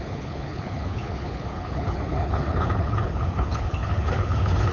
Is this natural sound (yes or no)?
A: no